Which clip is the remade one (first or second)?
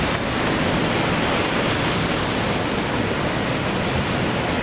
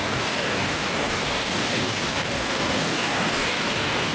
second